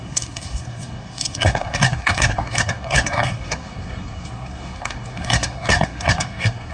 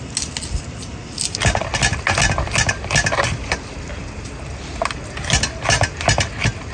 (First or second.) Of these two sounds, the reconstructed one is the first